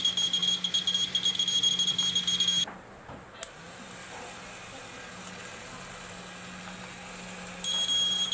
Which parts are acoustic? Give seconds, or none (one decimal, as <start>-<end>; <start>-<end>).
0.0-8.3